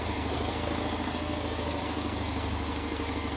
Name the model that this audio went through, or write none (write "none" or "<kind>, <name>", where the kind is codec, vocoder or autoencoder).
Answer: codec, SNAC